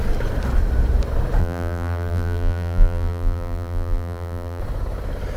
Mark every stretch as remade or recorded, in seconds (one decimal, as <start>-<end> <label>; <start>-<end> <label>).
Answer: 0.0-1.4 recorded; 1.4-4.6 remade; 4.6-5.4 recorded